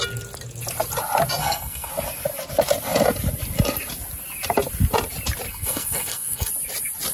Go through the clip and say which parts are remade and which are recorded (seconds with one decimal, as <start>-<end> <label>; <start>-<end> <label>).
0.0-1.4 recorded; 1.4-1.9 remade; 1.9-5.5 recorded; 5.5-6.5 remade; 6.5-7.1 recorded